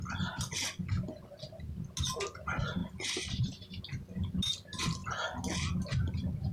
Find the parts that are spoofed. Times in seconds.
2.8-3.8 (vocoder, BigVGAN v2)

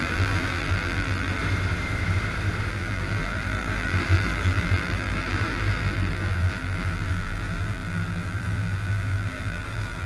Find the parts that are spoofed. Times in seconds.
0.0-1.4 (vocoder, BigVGAN v2); 2.7-10.1